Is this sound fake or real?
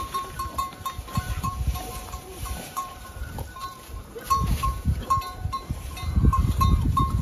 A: fake